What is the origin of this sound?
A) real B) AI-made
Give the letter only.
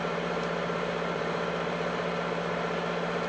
B